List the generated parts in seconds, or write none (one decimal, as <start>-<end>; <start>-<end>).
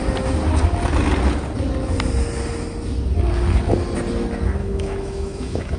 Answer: 4.6-5.8